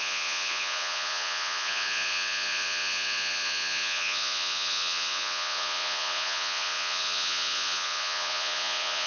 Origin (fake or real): fake